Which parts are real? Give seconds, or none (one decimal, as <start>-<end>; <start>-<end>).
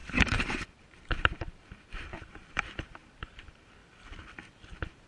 3.8-5.1